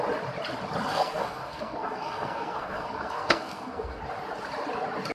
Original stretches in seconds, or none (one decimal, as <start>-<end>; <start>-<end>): 0.0-0.9; 4.0-5.1